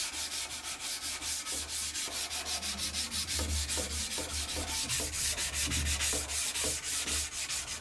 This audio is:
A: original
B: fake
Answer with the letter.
A